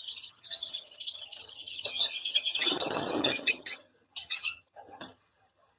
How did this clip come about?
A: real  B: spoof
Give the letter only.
B